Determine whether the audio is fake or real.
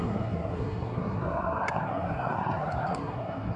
fake